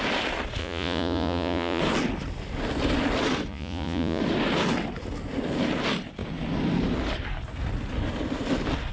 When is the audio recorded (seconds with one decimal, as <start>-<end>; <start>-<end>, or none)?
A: 0.0-0.6; 1.8-3.5; 4.2-8.9